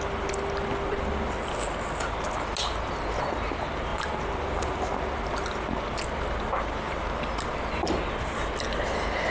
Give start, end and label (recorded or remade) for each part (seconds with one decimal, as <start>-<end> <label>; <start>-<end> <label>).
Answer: 0.0-9.3 recorded